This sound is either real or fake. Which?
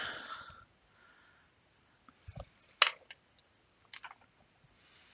real